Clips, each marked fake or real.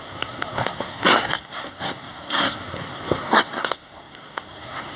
fake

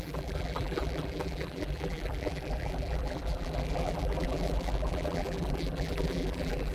fake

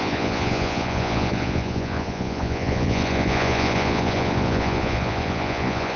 fake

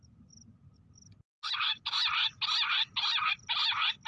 real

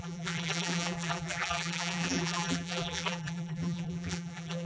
fake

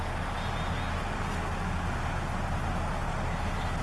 real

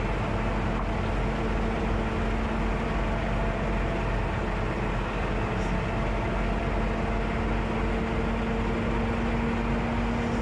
real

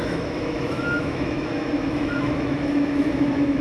fake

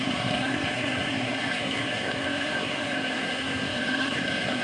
fake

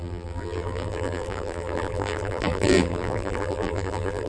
fake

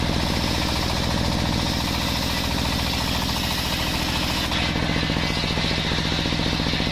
real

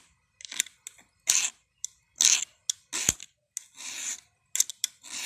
real